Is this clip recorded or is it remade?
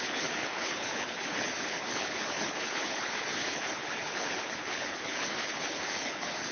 remade